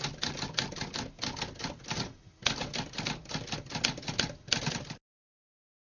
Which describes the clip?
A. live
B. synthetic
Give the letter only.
A